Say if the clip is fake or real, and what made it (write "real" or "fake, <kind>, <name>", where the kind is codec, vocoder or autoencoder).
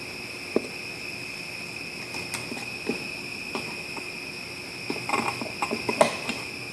real